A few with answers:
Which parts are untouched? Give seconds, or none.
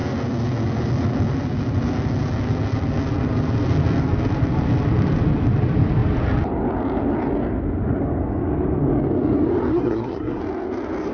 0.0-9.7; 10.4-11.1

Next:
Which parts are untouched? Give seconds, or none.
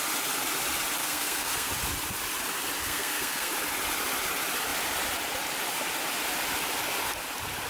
0.0-1.0; 1.7-2.8; 3.5-7.7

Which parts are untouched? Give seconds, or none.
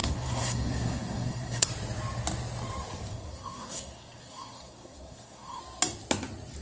1.7-3.1; 5.6-6.6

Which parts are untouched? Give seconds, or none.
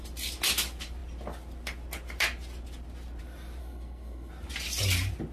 0.0-3.6; 4.3-5.3